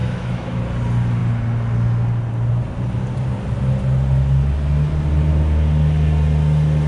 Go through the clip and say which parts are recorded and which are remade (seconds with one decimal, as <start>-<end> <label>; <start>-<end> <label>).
0.0-0.6 remade; 0.6-6.9 recorded